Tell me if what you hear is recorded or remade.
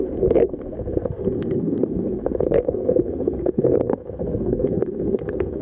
remade